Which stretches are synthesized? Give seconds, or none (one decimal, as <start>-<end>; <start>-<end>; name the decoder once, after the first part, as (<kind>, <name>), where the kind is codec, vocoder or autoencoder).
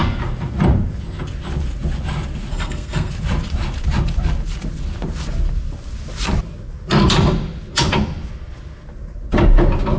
2.5-3.1 (codec, SNAC)